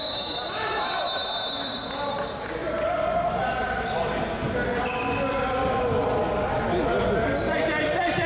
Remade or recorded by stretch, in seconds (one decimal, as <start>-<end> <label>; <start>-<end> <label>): 0.0-8.3 recorded